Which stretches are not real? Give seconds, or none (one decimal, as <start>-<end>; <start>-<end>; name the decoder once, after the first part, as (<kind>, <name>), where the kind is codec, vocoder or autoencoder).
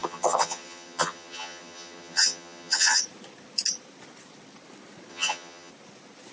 0.0-3.0 (vocoder, HiFi-GAN); 5.1-5.7